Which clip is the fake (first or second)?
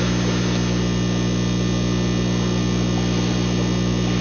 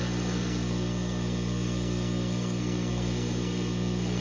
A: second